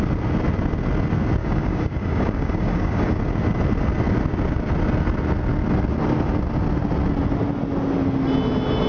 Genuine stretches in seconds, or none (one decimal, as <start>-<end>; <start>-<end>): 0.0-1.4; 3.2-8.9

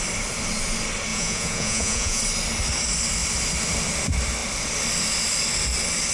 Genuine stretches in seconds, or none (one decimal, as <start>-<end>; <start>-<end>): 0.0-1.1; 2.2-6.1

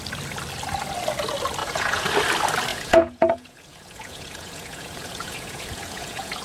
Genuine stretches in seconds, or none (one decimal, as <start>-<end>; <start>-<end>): 0.0-1.6; 2.1-2.7

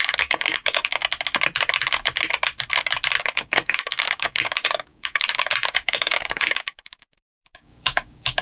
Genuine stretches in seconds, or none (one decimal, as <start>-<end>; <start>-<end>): 1.0-3.2

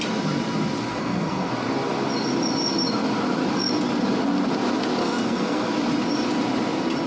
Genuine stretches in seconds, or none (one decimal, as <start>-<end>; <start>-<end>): 0.0-0.9; 1.5-5.0; 5.7-7.1